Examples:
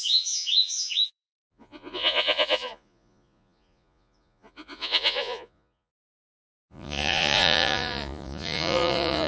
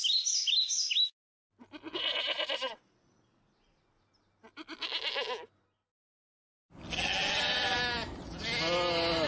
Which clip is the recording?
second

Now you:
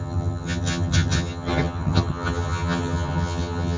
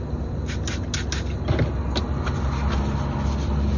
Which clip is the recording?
second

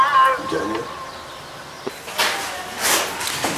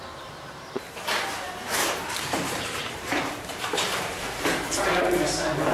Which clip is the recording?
first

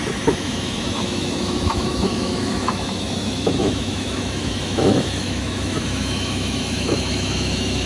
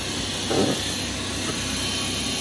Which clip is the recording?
second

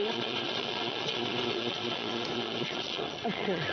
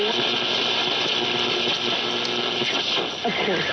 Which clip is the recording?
second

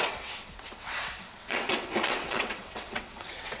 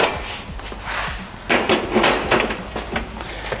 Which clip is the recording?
second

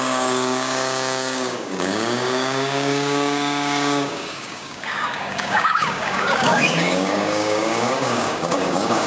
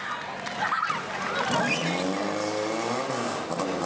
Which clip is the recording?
second